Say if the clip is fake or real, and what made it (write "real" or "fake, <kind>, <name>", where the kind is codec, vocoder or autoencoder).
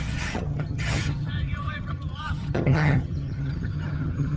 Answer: fake, vocoder, HiFi-GAN